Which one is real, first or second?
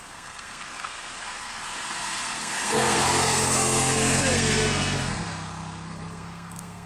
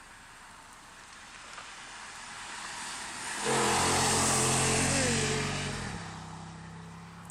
second